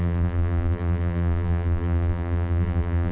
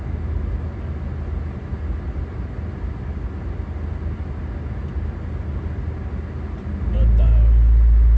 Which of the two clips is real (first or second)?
second